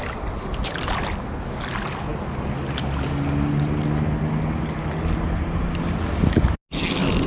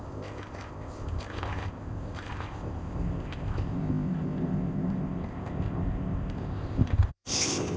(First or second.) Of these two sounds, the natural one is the first